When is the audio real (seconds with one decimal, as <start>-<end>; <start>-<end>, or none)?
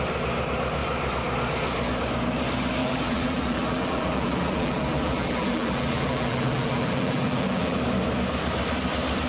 0.0-2.8; 7.8-9.3